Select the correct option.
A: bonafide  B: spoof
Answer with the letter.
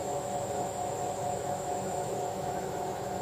B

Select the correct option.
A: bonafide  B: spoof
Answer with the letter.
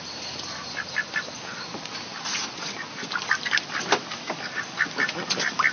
B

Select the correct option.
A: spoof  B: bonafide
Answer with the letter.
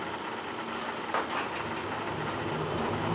B